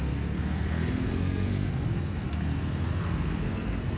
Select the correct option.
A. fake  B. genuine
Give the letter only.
A